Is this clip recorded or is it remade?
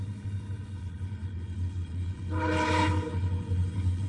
remade